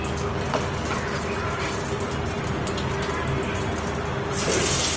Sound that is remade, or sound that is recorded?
recorded